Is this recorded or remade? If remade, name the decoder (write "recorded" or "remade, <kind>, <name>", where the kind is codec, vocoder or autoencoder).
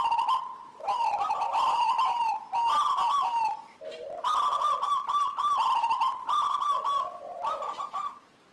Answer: remade, vocoder, BigVGAN v2